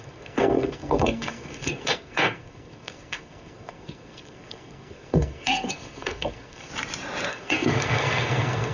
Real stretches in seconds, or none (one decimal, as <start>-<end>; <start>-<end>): 6.7-7.3